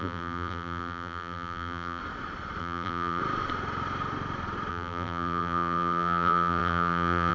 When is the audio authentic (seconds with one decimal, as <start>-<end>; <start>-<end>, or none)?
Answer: 2.0-2.6; 3.2-4.7